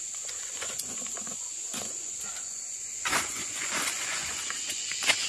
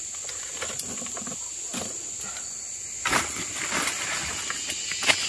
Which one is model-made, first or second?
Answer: first